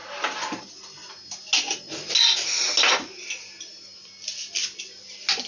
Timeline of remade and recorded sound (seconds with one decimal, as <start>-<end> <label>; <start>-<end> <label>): 0.0-5.5 recorded